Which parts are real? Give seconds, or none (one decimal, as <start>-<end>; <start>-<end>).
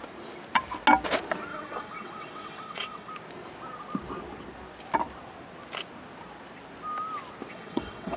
0.0-1.5; 3.1-7.5